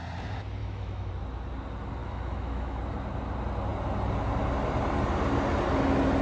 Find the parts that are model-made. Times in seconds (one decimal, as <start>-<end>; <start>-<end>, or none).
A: 0.6-1.1; 2.0-2.8